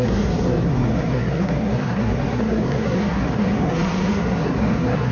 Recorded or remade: remade